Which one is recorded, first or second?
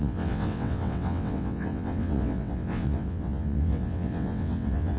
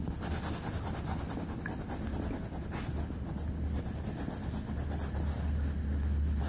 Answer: second